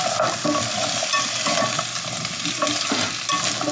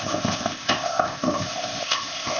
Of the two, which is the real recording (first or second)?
first